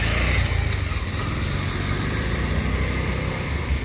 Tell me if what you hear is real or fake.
real